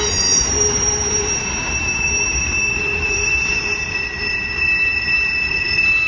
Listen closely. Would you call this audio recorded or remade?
remade